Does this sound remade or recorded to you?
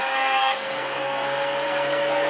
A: remade